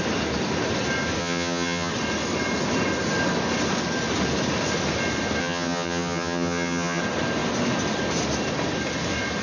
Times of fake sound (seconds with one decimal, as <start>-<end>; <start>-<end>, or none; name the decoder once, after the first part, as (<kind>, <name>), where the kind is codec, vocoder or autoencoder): 1.2-1.9 (vocoder, HiFi-GAN); 5.4-7.0